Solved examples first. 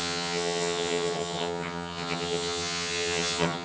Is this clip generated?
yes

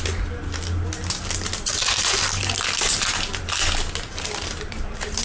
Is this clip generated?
no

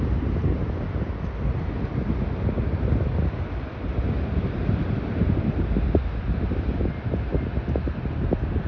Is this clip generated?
no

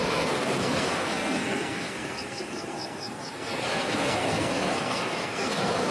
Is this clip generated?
yes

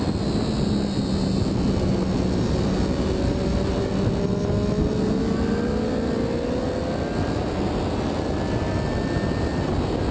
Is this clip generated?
no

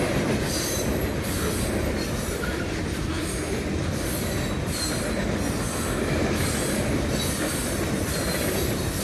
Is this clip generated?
no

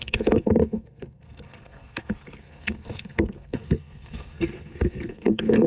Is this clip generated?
yes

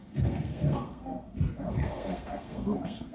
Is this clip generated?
yes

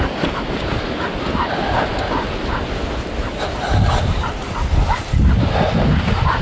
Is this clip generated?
no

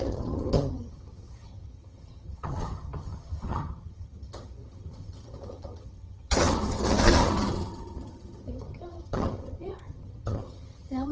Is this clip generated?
yes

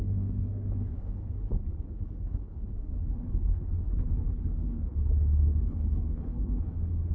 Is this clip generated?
yes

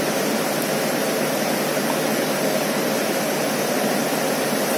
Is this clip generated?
yes